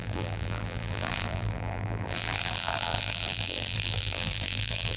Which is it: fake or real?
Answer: fake